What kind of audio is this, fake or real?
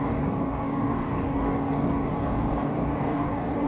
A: fake